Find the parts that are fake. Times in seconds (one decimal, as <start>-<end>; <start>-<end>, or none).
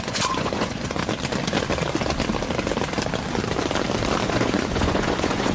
0.0-1.0; 4.3-5.5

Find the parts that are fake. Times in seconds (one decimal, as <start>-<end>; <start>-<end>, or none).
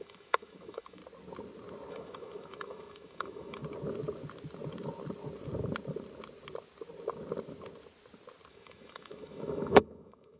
0.0-1.0; 1.9-3.6; 8.5-10.4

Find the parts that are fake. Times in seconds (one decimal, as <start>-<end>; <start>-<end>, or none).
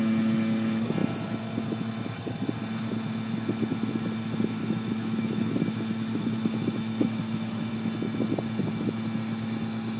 4.6-7.7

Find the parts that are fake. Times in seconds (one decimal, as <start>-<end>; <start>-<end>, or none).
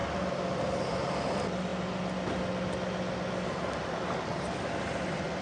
none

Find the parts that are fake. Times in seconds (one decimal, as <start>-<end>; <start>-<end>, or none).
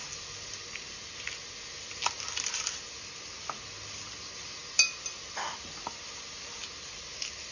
none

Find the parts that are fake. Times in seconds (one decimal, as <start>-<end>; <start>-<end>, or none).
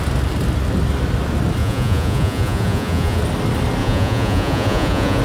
1.6-3.2; 3.8-5.2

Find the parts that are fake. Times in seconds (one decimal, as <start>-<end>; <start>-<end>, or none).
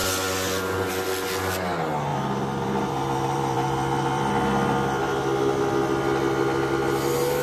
2.1-4.3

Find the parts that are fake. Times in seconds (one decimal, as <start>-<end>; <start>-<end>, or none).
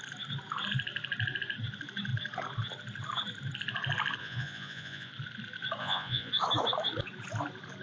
4.2-5.1; 5.8-6.3